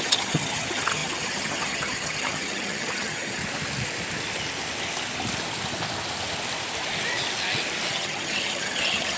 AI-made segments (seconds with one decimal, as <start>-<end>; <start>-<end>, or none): 0.0-3.4; 7.9-9.2